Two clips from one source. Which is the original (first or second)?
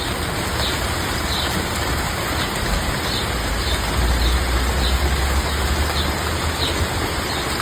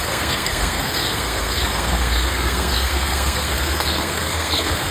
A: first